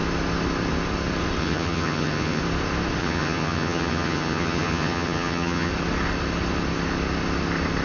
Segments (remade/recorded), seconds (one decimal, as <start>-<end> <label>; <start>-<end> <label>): 0.0-1.4 recorded; 1.4-2.4 remade; 2.4-3.0 recorded; 3.0-5.7 remade; 5.7-7.8 recorded